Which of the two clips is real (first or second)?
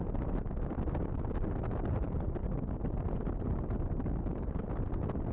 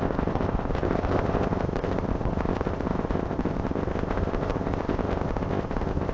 first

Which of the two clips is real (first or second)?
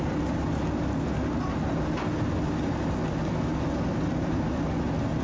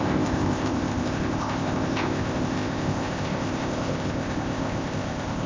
first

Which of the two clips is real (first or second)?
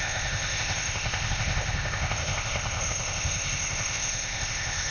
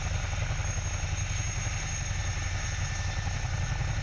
second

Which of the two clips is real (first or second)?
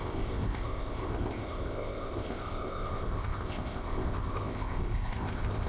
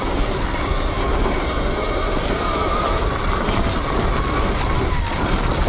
second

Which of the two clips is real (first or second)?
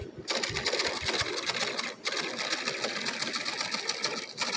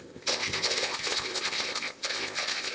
first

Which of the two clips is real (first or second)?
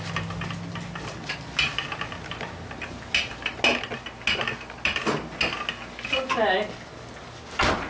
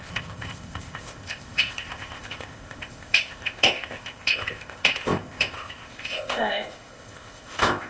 first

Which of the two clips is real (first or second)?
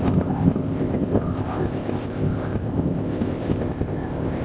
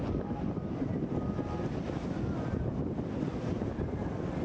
second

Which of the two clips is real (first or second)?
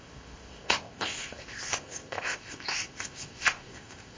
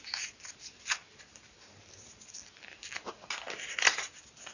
second